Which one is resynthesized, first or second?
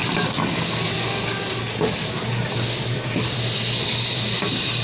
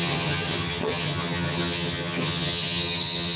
second